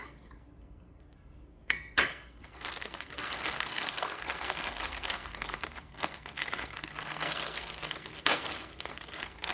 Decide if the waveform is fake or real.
fake